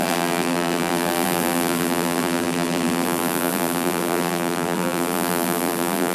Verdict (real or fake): fake